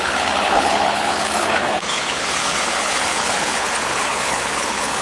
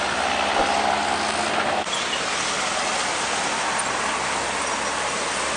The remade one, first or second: first